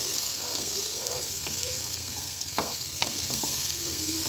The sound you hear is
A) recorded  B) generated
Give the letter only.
B